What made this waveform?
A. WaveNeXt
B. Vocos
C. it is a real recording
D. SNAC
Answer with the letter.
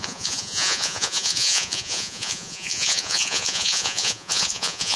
B